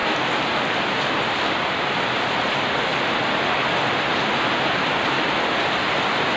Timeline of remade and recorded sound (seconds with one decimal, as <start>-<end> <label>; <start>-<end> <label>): 0.0-6.4 recorded